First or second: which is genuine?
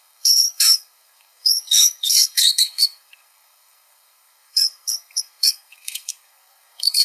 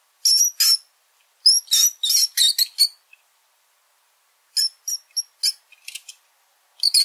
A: second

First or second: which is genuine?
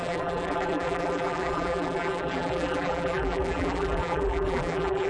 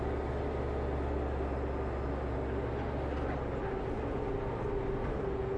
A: second